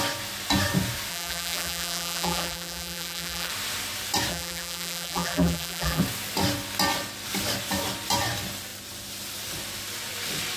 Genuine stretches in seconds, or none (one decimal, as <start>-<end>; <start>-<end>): 0.0-1.1; 3.5-4.3; 6.0-10.6